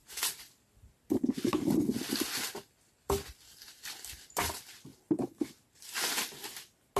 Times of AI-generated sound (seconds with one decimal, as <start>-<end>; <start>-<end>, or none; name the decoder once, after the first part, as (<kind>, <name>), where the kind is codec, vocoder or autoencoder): none